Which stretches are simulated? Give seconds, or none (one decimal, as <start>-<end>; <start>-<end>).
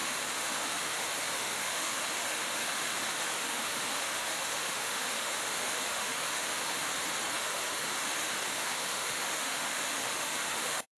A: 0.0-6.9; 7.4-11.0